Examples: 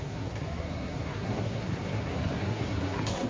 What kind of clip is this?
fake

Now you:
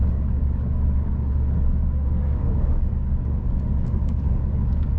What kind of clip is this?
fake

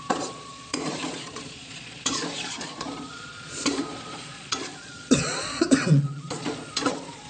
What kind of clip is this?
fake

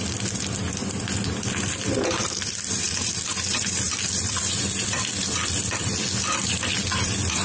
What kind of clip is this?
fake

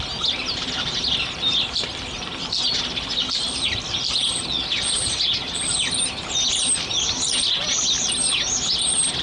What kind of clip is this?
real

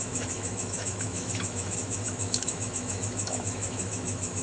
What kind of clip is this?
fake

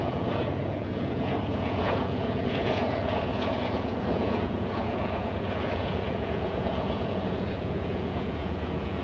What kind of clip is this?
fake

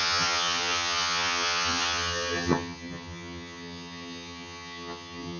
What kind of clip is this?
fake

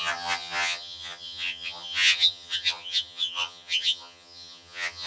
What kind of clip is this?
fake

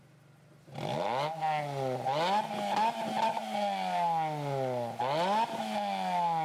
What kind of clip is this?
real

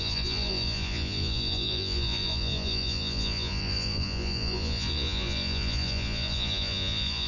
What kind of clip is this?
fake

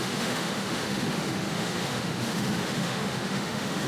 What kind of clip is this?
fake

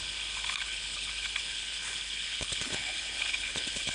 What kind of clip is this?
fake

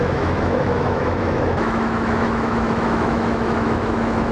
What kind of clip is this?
fake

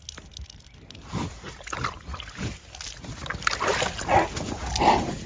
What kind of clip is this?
real